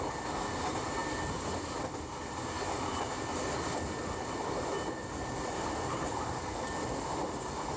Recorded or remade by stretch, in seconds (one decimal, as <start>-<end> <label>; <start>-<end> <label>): 0.0-7.8 recorded